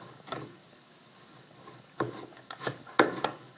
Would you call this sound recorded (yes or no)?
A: no